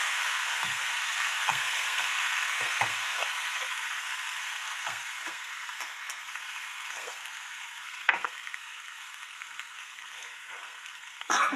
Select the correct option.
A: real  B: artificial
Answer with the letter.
B